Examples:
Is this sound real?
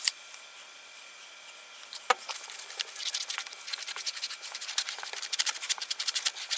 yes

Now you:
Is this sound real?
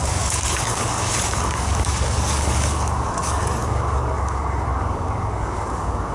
no